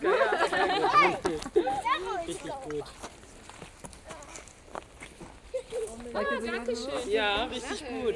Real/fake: real